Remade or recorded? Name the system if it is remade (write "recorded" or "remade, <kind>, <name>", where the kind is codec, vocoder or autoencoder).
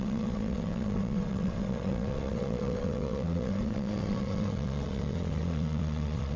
remade, vocoder, WaveNeXt